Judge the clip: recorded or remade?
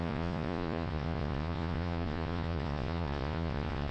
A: remade